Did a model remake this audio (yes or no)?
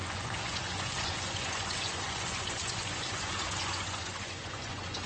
yes